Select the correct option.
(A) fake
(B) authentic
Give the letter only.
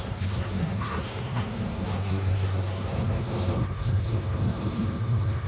A